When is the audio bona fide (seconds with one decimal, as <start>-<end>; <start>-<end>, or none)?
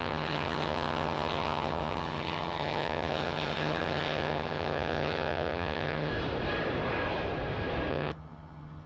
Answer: 6.1-7.9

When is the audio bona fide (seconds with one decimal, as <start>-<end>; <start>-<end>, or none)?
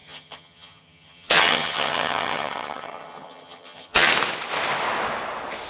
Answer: 4.1-5.7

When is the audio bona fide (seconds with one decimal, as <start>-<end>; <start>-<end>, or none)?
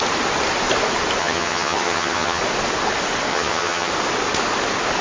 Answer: 0.0-1.2; 2.4-3.3; 3.9-5.0